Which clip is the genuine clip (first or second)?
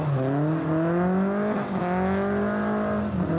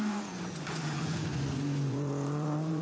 first